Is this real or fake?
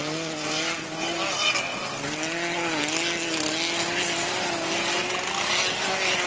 real